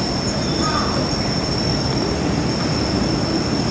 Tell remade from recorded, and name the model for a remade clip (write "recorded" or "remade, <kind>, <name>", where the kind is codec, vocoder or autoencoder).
recorded